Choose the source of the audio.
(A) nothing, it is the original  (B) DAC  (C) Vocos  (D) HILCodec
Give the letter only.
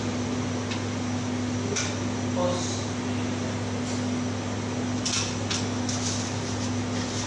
A